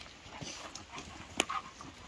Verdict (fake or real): real